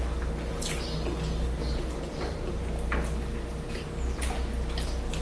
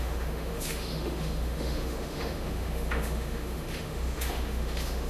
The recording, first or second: first